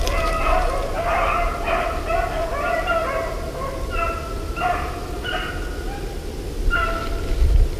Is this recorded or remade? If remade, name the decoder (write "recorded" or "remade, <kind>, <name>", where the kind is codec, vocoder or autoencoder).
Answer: recorded